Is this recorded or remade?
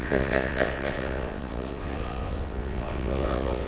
remade